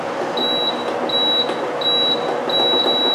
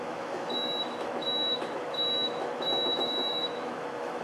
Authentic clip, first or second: first